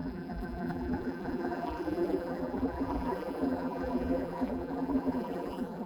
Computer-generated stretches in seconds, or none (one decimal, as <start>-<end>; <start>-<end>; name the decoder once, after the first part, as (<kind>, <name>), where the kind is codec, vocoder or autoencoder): 0.0-5.9 (vocoder, BigVGAN v2)